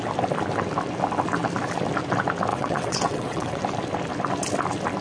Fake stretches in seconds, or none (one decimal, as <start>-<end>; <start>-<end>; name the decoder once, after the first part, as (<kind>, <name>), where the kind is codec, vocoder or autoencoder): 2.5-3.6 (vocoder, WaveNeXt)